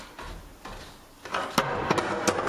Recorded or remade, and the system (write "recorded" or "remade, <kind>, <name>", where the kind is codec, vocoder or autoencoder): recorded